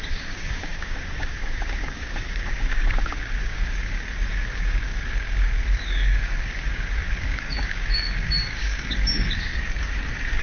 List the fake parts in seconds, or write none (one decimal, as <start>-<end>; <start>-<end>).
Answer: 0.0-10.4